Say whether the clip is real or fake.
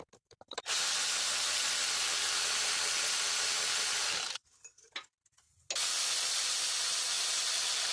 fake